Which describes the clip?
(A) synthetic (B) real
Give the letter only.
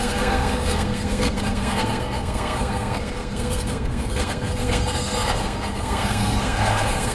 A